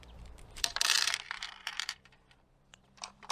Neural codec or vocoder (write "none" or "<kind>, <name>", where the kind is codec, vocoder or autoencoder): vocoder, BigVGAN v2